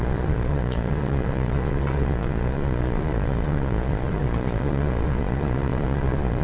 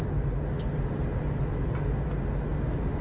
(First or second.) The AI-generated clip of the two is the first